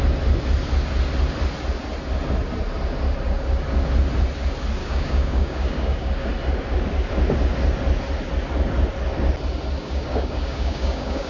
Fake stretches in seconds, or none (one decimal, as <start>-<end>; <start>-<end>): 4.8-6.3; 9.8-11.3